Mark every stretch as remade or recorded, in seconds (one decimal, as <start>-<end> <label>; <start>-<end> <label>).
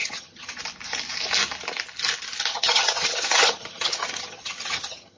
0.0-0.6 remade; 0.6-2.5 recorded; 2.5-5.2 remade